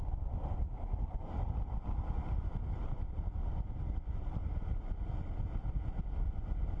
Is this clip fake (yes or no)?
no